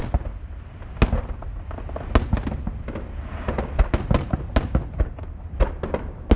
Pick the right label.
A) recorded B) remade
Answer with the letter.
A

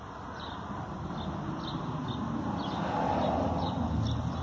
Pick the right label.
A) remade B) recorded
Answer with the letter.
B